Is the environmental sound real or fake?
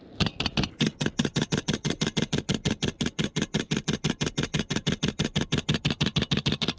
real